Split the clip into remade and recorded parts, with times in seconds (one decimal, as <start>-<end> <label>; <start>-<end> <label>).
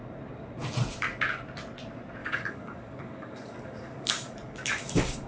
0.0-2.2 recorded; 2.2-5.3 remade